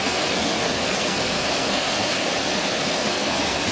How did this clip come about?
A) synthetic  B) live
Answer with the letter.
A